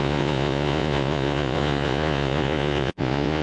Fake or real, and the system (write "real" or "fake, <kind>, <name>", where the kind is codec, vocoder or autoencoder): fake, vocoder, Vocos